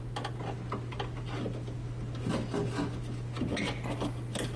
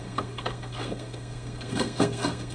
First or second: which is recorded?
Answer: first